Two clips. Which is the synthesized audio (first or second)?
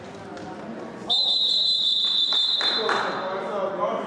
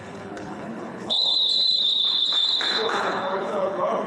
second